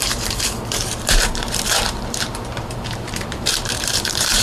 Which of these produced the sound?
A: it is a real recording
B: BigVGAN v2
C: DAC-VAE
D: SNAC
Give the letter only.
B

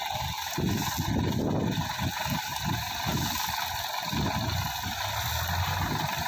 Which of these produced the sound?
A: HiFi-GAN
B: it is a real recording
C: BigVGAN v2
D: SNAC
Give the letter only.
B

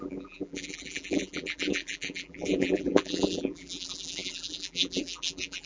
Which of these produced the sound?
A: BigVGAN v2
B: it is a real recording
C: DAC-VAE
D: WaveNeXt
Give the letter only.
A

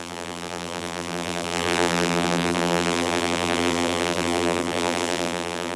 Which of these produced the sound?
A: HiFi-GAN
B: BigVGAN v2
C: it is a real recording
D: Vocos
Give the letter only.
B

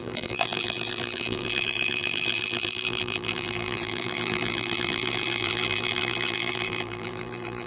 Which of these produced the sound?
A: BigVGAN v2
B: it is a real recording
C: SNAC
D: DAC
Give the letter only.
A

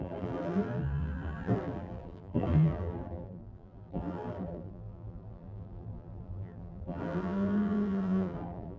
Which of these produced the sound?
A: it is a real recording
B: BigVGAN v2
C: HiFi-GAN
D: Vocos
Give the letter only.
B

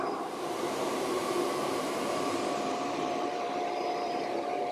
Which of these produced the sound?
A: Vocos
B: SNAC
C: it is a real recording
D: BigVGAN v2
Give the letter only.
D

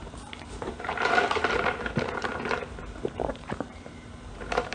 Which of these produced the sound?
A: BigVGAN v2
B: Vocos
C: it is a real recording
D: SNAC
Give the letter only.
A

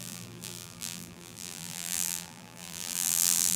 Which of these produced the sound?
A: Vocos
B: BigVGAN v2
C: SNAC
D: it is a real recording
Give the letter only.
B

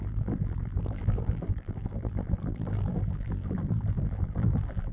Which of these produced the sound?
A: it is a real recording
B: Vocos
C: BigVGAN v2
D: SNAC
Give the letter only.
C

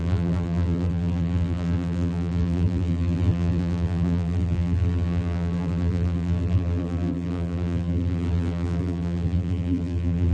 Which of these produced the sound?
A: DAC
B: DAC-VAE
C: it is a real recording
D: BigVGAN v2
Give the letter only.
D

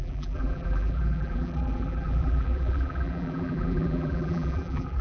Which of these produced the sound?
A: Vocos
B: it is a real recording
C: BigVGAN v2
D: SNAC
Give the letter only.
C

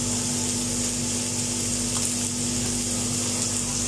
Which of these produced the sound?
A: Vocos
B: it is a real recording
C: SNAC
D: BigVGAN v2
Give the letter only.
B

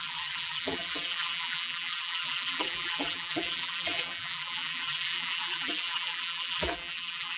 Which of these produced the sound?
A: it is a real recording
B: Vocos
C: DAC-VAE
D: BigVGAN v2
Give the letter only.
D